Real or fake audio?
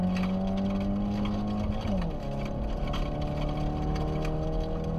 real